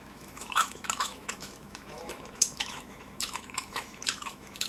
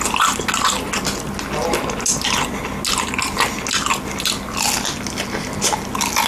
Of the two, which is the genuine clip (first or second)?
second